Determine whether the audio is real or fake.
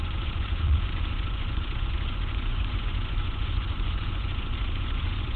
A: fake